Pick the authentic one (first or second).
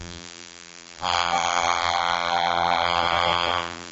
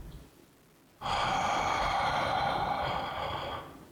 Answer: second